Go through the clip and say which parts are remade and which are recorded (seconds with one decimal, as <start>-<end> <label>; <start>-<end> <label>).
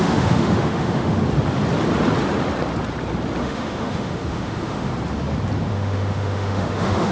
0.0-1.2 remade; 1.2-3.4 recorded; 3.4-4.9 remade; 4.9-5.7 recorded; 5.7-7.1 remade